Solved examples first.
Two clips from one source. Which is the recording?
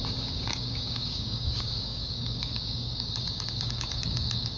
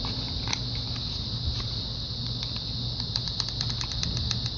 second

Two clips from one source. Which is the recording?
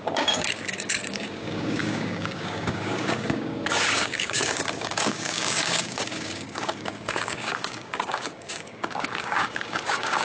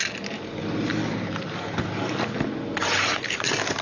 second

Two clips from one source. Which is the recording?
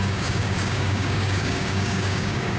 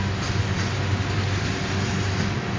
second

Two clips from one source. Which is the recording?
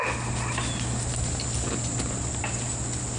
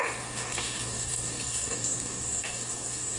first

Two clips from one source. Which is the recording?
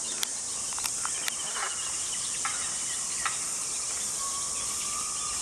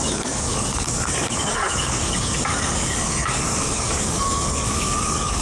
first